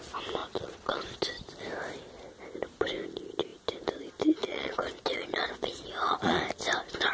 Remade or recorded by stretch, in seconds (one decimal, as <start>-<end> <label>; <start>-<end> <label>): 0.0-0.4 recorded; 0.4-1.2 remade; 1.2-4.4 recorded; 4.4-6.4 remade; 6.4-7.1 recorded